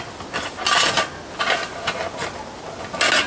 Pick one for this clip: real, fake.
real